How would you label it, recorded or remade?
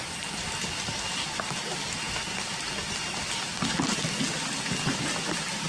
recorded